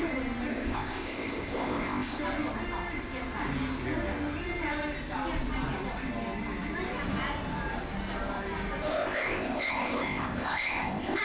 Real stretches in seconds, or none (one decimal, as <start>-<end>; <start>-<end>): 0.0-0.5; 2.2-8.9

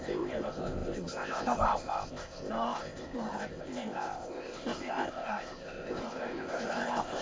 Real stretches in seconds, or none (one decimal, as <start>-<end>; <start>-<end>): none

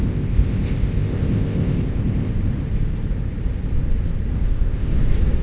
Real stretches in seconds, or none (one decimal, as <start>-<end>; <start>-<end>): 2.3-4.3; 4.9-5.4

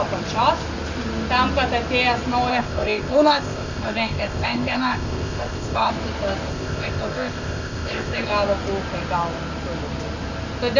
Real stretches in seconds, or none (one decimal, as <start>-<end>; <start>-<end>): 0.0-2.5; 5.9-6.5; 8.3-10.8

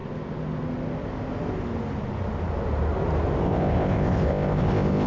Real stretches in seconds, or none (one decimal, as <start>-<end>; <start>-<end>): 0.0-3.4

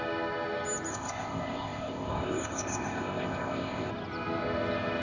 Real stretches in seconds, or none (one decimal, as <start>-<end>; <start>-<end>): 0.0-0.9; 3.9-5.0

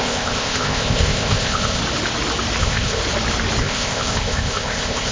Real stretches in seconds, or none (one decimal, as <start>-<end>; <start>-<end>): 1.8-2.6; 3.0-3.6

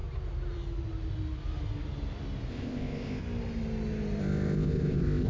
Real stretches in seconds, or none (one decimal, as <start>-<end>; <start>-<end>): 0.0-2.5; 3.2-4.2